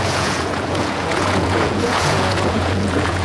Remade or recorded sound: remade